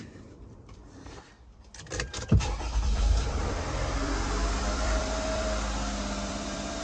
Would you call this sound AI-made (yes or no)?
yes